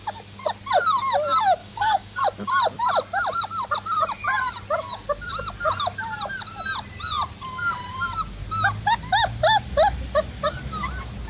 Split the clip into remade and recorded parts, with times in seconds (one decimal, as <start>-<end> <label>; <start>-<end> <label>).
0.0-1.6 recorded; 1.6-2.2 remade; 2.2-11.3 recorded